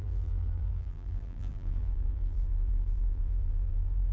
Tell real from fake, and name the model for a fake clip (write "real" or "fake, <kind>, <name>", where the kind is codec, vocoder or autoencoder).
fake, vocoder, BigVGAN v2